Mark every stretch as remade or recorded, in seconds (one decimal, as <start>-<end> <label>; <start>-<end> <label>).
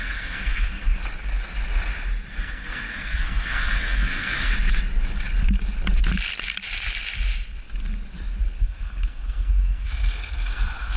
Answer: 0.0-0.9 remade; 0.9-2.3 recorded; 2.3-4.5 remade; 4.5-8.6 recorded; 8.6-11.0 remade